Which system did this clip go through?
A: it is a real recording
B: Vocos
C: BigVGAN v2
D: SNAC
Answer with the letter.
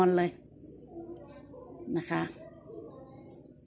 A